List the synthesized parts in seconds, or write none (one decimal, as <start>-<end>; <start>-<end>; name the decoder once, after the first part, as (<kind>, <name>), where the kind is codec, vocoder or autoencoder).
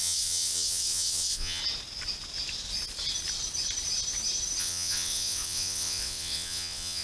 0.0-1.6 (vocoder, WaveNeXt); 4.6-7.0